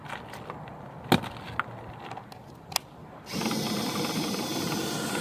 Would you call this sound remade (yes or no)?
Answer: no